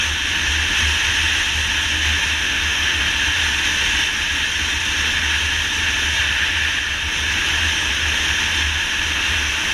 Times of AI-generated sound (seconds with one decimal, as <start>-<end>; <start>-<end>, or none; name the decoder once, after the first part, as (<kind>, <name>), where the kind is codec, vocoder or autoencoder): 2.4-3.0 (autoencoder, DAC-VAE)